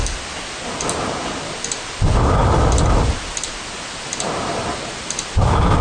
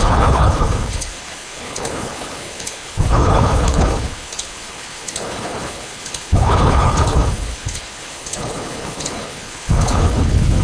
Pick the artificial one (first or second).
second